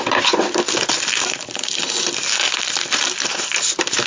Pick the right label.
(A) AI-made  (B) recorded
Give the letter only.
B